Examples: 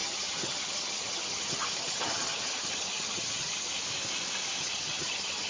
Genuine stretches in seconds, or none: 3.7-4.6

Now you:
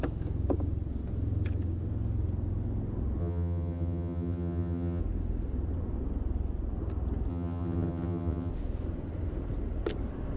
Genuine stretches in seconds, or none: 0.0-3.2; 5.0-7.3; 8.5-10.4

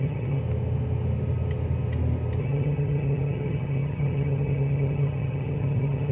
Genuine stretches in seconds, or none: 0.4-2.4